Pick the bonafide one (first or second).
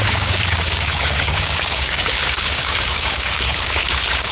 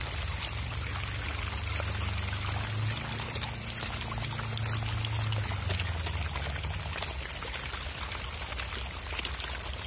second